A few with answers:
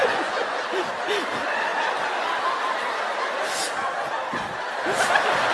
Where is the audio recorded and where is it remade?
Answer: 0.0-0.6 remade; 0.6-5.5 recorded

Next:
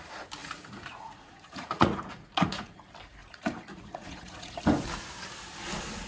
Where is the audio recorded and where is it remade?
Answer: 0.0-0.4 recorded; 0.4-2.8 remade; 2.8-3.2 recorded; 3.2-4.6 remade; 4.6-6.1 recorded

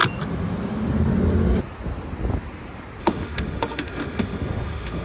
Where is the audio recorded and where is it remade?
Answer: 0.0-3.0 recorded; 3.0-5.0 remade

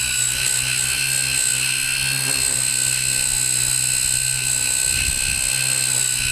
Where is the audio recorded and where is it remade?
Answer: 0.0-6.3 recorded

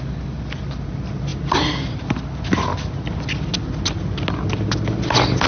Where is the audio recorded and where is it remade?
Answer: 0.0-5.5 recorded

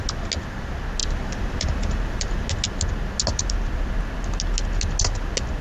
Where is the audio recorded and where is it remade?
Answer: 0.0-1.0 recorded; 1.0-2.5 remade; 2.5-5.6 recorded

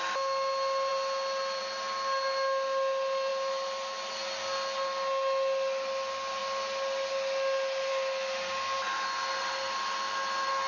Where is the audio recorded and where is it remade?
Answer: 0.0-10.7 recorded